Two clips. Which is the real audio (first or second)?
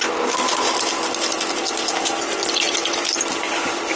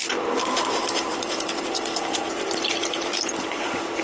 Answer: first